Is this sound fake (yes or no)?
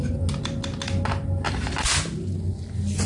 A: no